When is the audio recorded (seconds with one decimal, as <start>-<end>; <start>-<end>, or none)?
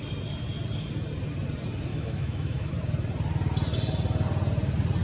0.0-1.9; 2.7-5.0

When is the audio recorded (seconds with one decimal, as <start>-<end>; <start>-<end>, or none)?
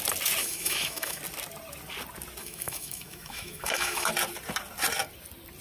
0.0-0.4; 1.2-2.4; 4.1-5.6